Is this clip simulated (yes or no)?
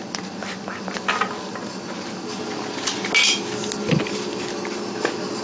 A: no